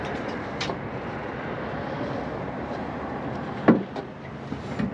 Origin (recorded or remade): remade